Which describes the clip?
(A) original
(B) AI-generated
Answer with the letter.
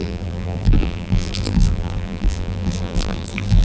B